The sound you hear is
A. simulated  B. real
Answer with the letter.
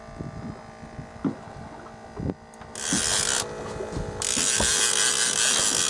B